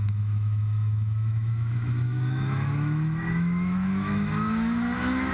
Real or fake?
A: fake